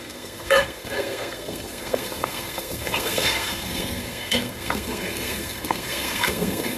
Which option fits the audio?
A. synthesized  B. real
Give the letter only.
A